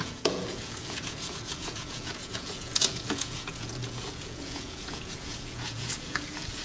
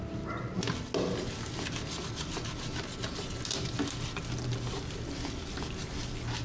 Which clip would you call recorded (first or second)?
second